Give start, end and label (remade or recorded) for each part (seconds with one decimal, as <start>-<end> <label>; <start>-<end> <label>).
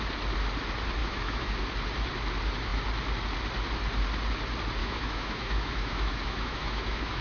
0.0-1.0 recorded; 1.0-1.5 remade; 1.5-4.8 recorded; 4.8-7.2 remade